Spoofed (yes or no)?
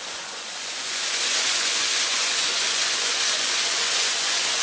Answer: yes